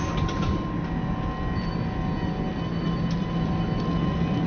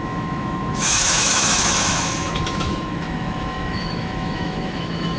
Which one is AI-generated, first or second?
second